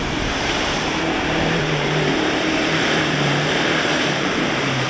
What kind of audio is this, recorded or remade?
remade